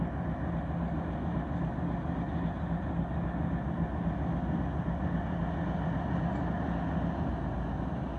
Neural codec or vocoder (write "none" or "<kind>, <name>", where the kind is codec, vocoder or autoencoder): none